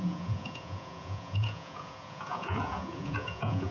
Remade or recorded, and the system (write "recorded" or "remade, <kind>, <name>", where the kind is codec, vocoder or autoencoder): remade, vocoder, Vocos